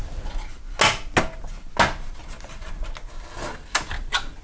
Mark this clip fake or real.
real